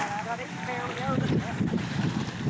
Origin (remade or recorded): recorded